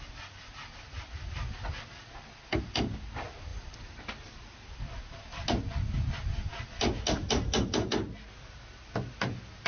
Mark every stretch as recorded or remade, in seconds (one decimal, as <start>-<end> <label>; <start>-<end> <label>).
0.0-9.7 recorded